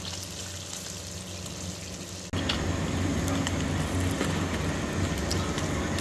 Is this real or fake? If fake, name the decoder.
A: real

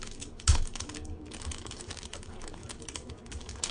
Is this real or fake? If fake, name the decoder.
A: fake, codec, DAC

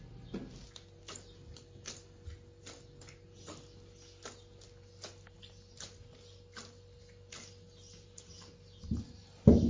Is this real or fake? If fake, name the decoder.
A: real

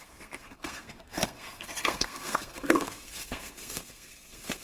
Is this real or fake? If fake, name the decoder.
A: fake, codec, SNAC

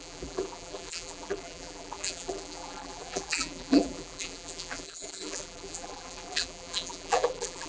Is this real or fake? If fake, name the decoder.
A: fake, vocoder, BigVGAN v2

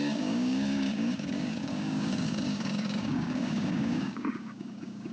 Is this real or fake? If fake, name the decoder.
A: fake, codec, DAC